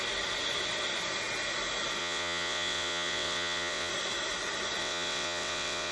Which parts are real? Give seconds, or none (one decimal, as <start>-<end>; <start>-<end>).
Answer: 0.0-2.0; 3.9-4.8